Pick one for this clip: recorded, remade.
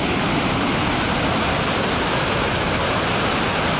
recorded